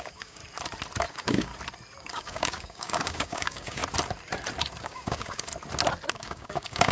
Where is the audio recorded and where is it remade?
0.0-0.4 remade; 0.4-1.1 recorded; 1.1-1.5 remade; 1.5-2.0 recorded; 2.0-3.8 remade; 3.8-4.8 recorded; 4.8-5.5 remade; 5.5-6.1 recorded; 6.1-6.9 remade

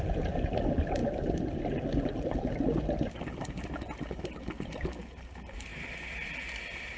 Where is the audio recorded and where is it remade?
0.0-7.0 recorded

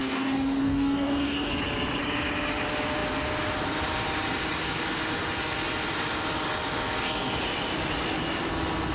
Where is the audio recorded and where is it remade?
0.0-1.5 remade; 1.5-8.9 recorded

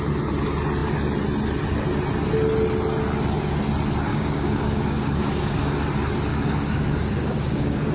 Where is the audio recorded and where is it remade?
0.0-4.1 recorded; 4.1-5.7 remade; 5.7-6.3 recorded; 6.3-7.9 remade

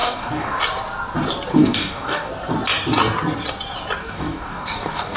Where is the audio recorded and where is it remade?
0.0-0.6 remade; 0.6-1.5 recorded; 1.5-2.3 remade; 2.3-4.0 recorded; 4.0-5.2 remade

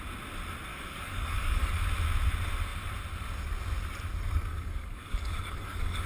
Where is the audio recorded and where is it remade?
0.0-0.7 recorded; 0.7-1.9 remade; 1.9-4.5 recorded; 4.5-6.1 remade